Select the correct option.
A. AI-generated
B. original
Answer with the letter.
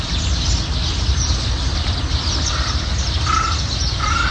B